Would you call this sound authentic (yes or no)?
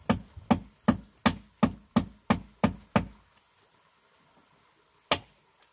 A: yes